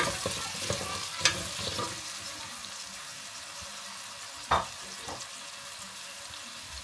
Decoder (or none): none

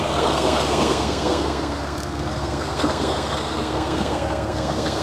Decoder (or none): codec, SNAC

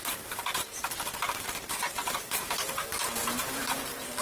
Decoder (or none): vocoder, BigVGAN v2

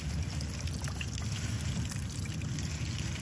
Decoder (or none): none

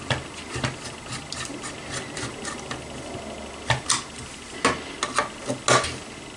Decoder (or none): none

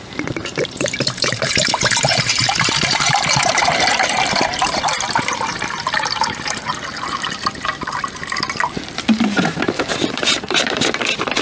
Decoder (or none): vocoder, BigVGAN v2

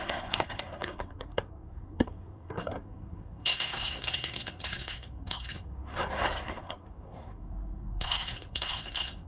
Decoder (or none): codec, SNAC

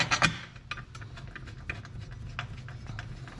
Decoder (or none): none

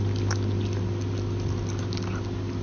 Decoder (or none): none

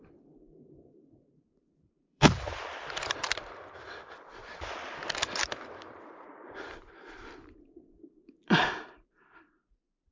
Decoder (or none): vocoder, BigVGAN v2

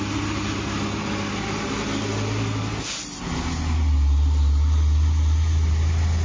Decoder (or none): none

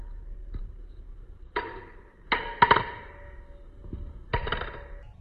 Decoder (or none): none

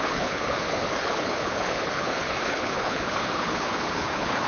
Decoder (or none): codec, HILCodec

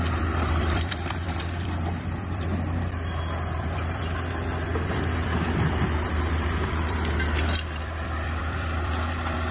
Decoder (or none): vocoder, BigVGAN v2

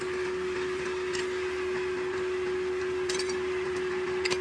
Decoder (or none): none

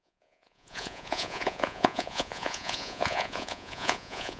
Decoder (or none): vocoder, Vocos